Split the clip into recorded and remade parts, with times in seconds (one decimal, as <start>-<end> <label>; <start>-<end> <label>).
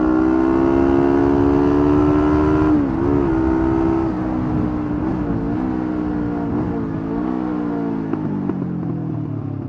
0.0-9.7 recorded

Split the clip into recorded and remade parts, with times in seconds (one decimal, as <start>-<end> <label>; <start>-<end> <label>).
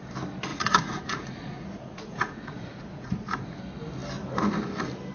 0.0-0.5 recorded; 0.5-3.6 remade; 3.6-5.1 recorded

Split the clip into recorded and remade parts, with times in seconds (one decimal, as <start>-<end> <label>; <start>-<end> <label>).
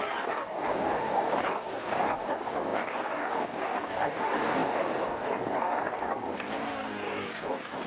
0.0-7.9 remade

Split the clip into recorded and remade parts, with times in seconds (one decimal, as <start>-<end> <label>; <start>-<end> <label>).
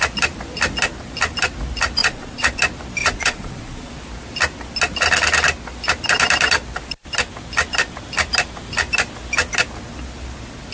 0.0-2.0 recorded; 2.0-2.6 remade; 2.6-3.0 recorded; 3.0-3.9 remade; 3.9-10.7 recorded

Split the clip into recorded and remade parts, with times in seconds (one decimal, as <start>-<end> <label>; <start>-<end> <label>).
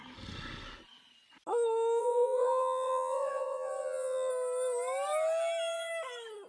0.0-2.0 recorded; 2.0-4.3 remade; 4.3-6.5 recorded